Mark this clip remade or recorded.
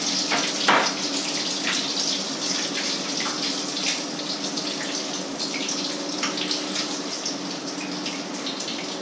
recorded